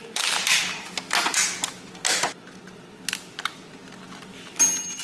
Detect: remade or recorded recorded